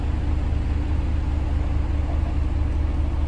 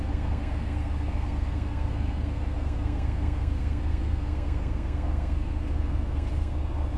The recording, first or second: first